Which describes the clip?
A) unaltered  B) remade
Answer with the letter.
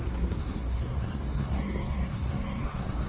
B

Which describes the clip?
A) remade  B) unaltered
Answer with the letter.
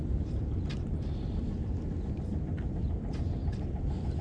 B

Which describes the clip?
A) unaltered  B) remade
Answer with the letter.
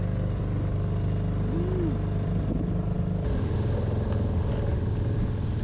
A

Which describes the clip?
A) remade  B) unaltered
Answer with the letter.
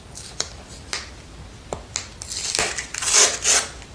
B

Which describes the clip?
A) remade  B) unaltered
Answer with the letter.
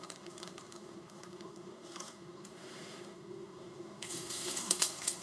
A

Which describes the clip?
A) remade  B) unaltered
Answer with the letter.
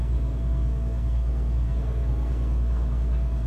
A